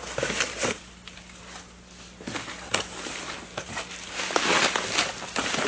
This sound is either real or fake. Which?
real